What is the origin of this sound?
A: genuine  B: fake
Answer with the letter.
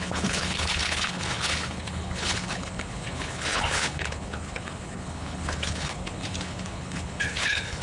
B